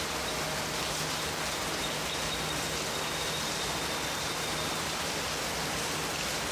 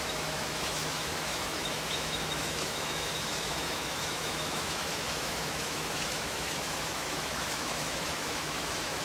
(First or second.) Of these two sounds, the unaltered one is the first